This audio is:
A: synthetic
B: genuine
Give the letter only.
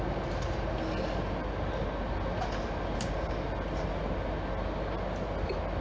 B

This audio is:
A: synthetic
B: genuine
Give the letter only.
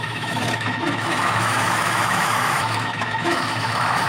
A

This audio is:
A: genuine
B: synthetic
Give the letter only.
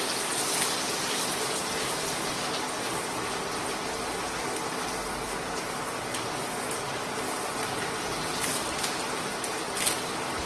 A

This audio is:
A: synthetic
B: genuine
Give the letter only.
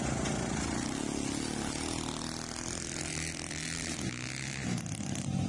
B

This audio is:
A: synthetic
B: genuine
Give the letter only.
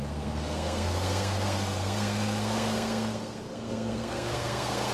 A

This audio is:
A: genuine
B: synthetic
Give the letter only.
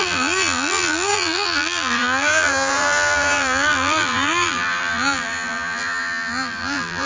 B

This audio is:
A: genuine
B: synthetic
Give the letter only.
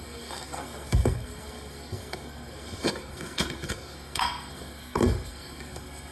B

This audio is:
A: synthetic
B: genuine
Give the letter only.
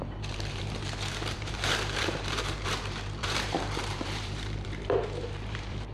A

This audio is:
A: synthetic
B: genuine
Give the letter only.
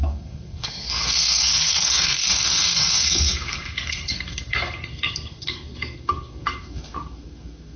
A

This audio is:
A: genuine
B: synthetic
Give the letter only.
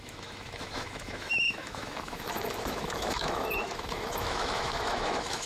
B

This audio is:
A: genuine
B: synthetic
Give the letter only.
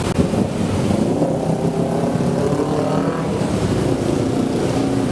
A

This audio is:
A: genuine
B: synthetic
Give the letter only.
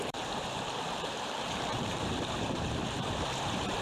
B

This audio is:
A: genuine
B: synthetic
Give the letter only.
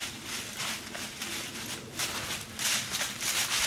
A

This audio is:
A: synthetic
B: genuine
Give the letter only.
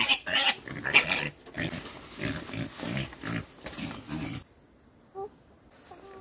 B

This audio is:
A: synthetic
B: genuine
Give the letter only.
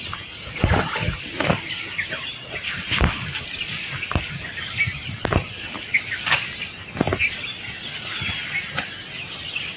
B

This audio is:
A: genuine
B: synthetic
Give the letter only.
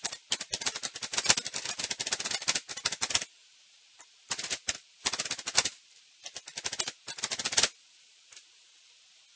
A